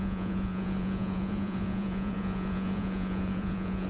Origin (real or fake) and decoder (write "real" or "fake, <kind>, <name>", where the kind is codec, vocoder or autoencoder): fake, vocoder, Vocos